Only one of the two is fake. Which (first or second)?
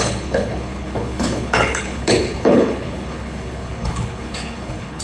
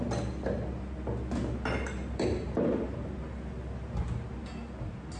first